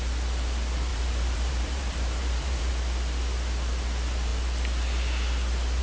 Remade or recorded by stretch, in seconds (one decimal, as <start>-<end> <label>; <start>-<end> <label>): 0.0-0.9 recorded; 0.9-2.7 remade; 2.7-5.8 recorded